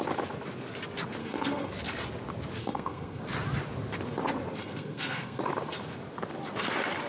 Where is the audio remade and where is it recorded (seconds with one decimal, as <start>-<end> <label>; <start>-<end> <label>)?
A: 0.0-1.2 recorded; 1.2-1.7 remade; 1.7-2.6 recorded; 2.6-3.2 remade; 3.2-4.6 recorded; 4.6-5.4 remade; 5.4-7.1 recorded